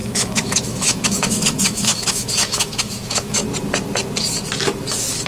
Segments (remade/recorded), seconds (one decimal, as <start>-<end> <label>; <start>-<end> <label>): 0.0-3.4 remade; 3.4-5.3 recorded